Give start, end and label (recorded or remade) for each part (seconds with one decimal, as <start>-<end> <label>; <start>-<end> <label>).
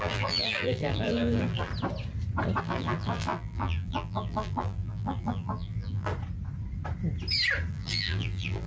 0.0-1.7 remade; 1.7-2.6 recorded; 2.6-6.1 remade; 6.1-7.7 recorded; 7.7-8.7 remade